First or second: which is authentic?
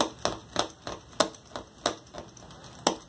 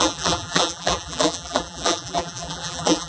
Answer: first